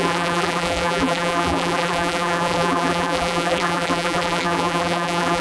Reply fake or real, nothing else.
fake